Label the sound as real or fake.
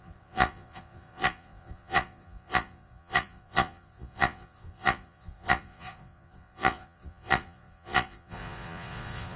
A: fake